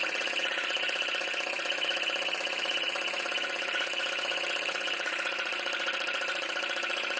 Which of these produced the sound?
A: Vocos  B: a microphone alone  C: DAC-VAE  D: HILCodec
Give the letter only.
A